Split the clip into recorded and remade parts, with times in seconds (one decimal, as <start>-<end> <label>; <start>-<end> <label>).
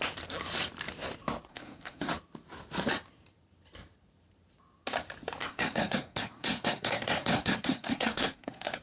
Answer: 0.0-1.5 recorded; 1.5-2.1 remade; 2.1-5.4 recorded; 5.4-8.8 remade